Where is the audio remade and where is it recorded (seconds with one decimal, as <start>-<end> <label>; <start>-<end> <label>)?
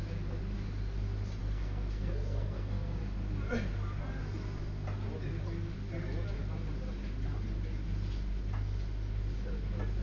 0.0-1.4 recorded; 1.4-3.0 remade; 3.0-10.0 recorded